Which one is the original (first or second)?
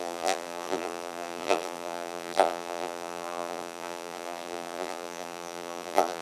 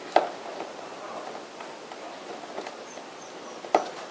second